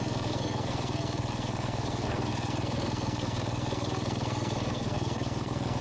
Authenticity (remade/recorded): remade